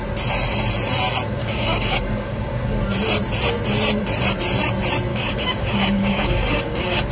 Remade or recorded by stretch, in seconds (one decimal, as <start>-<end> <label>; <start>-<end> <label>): 0.0-1.4 recorded; 1.4-2.8 remade; 2.8-5.1 recorded; 5.1-7.1 remade